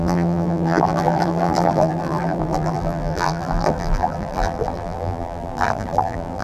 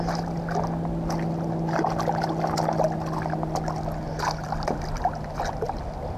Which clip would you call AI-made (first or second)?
first